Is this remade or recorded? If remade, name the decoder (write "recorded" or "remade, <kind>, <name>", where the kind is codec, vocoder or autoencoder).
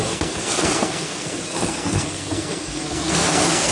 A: remade, codec, SNAC